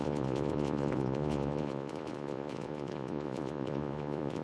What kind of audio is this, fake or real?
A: fake